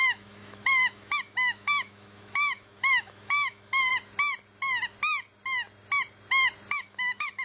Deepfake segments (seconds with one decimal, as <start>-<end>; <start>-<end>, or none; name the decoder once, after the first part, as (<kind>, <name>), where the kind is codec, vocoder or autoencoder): 0.0-3.9 (autoencoder, DAC-VAE); 6.7-7.4